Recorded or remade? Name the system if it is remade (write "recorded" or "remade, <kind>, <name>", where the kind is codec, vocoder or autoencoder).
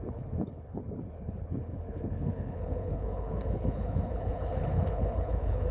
remade, codec, HILCodec